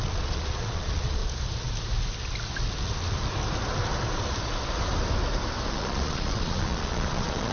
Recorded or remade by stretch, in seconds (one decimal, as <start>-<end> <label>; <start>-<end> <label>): 0.0-1.2 remade; 1.2-5.7 recorded; 5.7-7.5 remade